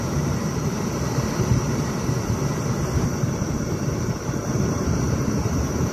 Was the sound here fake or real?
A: fake